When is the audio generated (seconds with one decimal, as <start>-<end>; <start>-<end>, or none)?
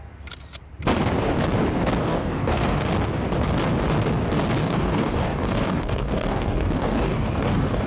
2.0-2.9; 4.6-7.9